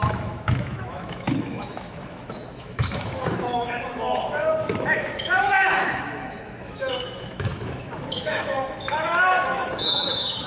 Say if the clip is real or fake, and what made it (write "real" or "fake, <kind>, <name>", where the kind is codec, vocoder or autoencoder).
fake, autoencoder, DAC-VAE